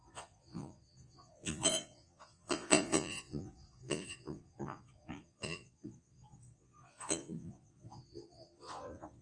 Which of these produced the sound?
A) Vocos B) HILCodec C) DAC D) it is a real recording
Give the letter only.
A